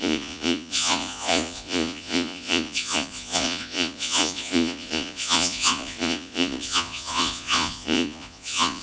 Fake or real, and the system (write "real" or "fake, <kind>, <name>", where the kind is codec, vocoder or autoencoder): fake, vocoder, Vocos